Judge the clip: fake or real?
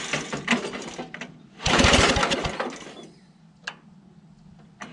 real